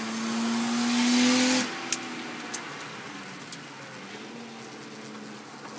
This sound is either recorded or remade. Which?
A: recorded